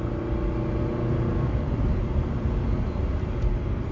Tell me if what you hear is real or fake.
real